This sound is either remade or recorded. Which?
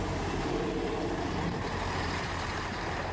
remade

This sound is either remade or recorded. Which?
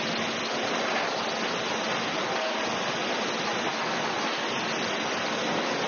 recorded